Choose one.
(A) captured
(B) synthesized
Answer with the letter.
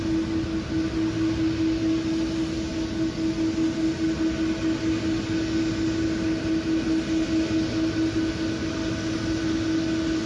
A